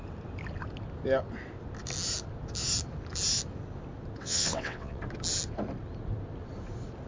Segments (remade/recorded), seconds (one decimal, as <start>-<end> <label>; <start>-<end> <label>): 0.0-4.2 recorded; 4.2-5.0 remade; 5.0-7.1 recorded